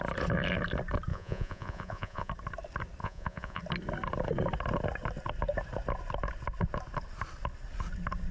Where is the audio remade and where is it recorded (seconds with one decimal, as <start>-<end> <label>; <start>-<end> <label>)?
0.0-1.1 recorded; 1.1-2.3 remade; 2.3-3.0 recorded; 3.0-3.6 remade; 3.6-8.3 recorded